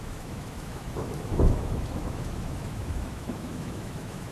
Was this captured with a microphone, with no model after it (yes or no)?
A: no